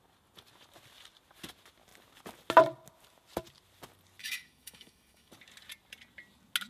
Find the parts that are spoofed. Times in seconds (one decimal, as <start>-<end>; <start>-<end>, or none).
4.2-5.3